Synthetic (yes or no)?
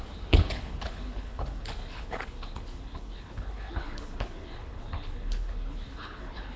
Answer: yes